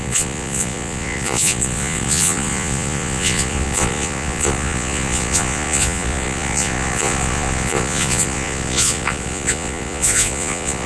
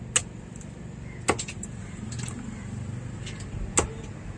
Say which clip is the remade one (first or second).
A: first